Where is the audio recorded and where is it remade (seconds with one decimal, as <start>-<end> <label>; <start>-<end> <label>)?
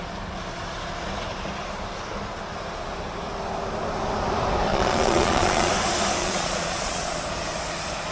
0.0-4.7 recorded; 4.7-5.7 remade; 5.7-6.2 recorded; 6.2-7.2 remade; 7.2-8.1 recorded